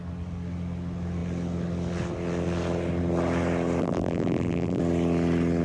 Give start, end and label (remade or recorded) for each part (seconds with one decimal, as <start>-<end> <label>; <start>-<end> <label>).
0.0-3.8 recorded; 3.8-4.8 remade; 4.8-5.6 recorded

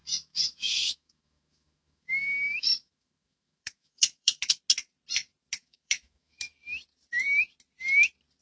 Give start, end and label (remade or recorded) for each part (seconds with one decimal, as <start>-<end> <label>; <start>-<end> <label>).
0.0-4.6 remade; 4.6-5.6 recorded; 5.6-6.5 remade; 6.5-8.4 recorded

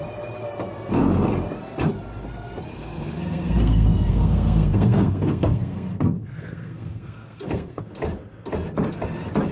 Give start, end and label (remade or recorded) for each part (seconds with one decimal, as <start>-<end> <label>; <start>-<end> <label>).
0.0-2.7 recorded; 2.7-7.8 remade; 7.8-9.5 recorded

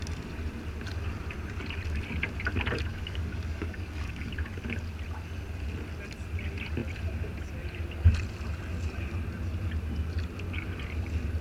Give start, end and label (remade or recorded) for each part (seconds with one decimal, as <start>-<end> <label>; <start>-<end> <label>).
0.0-2.9 recorded; 2.9-4.3 remade; 4.3-11.4 recorded

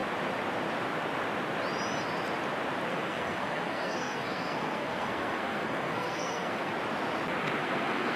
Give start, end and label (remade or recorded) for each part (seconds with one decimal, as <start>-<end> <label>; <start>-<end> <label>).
0.0-2.9 recorded; 2.9-6.7 remade; 6.7-7.6 recorded; 7.6-8.2 remade

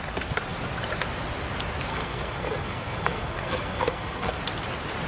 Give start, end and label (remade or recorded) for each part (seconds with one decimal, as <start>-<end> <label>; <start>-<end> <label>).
0.0-1.9 recorded; 1.9-4.4 remade; 4.4-5.1 recorded

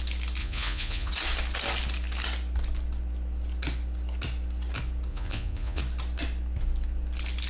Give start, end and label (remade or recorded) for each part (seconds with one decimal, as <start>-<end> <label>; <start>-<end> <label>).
0.0-0.4 recorded; 0.4-1.1 remade; 1.1-5.1 recorded; 5.1-5.8 remade; 5.8-7.5 recorded